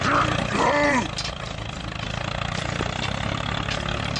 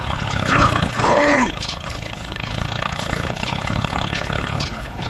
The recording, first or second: first